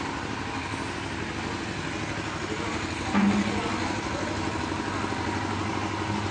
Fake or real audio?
real